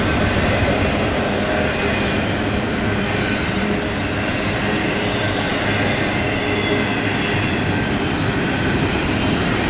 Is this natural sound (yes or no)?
yes